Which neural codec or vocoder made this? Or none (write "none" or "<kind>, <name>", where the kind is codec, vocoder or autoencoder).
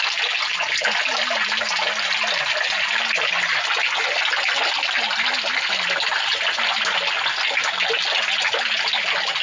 none